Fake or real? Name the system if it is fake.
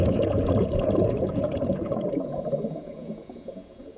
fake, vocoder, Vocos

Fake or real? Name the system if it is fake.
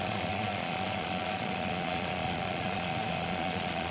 fake, vocoder, Vocos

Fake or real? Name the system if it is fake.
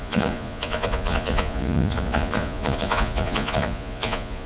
fake, vocoder, Vocos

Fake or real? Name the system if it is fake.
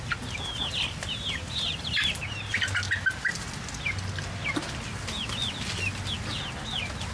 real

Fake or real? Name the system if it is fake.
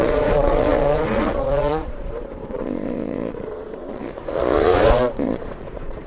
fake, vocoder, Vocos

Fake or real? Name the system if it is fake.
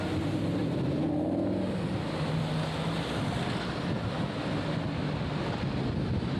real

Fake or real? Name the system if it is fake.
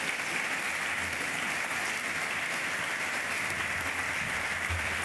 real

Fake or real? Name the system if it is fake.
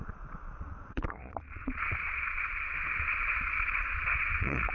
fake, vocoder, Vocos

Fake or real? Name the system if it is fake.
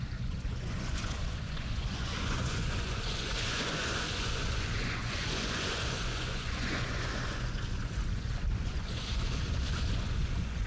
fake, vocoder, Vocos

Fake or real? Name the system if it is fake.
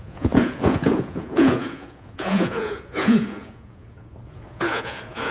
fake, vocoder, Vocos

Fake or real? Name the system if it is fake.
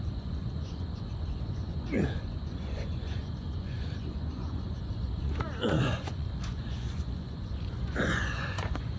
fake, vocoder, Vocos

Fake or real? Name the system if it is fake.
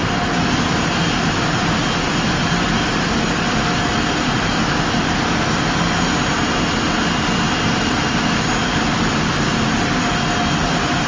real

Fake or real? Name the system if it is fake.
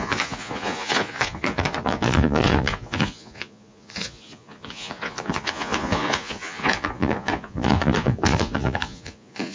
fake, vocoder, Vocos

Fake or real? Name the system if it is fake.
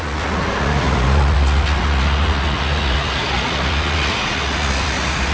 fake, vocoder, Vocos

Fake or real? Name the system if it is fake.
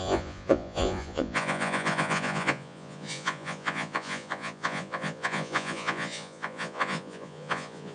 fake, vocoder, Vocos